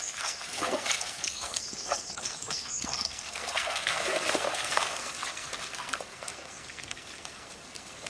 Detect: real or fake fake